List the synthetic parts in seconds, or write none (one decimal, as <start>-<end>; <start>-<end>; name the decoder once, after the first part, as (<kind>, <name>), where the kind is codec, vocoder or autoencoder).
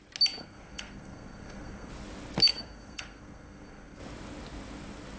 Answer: 0.4-1.9 (codec, SNAC); 2.5-4.0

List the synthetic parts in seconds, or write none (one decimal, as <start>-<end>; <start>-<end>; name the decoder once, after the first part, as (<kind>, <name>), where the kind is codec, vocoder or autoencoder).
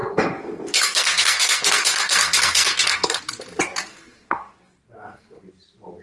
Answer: 0.0-3.2 (codec, SNAC); 3.9-5.4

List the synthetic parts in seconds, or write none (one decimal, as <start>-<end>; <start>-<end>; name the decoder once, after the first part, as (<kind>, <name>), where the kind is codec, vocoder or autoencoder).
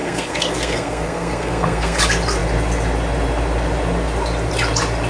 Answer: 0.0-2.0 (codec, SNAC)